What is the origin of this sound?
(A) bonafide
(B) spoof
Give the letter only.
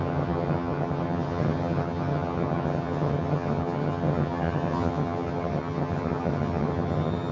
B